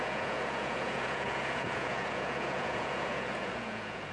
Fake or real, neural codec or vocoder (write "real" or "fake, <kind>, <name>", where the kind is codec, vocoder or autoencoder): fake, vocoder, Vocos